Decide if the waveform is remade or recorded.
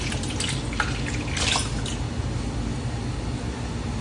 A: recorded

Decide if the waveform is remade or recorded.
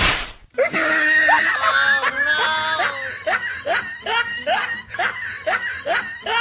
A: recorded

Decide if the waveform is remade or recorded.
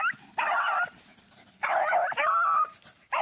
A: recorded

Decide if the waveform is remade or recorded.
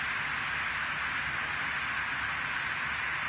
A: recorded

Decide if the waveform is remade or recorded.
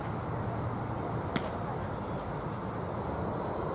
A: recorded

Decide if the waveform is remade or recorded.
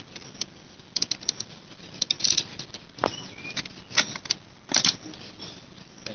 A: recorded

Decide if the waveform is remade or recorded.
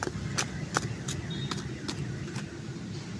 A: recorded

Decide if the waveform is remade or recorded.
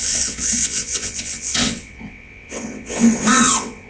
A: remade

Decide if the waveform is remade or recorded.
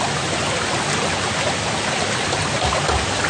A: recorded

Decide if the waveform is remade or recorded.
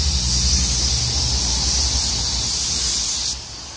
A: recorded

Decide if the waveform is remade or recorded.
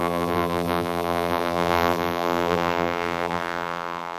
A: remade